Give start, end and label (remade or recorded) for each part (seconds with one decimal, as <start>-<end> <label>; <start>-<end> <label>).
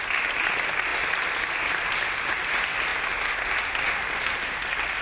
0.0-5.0 recorded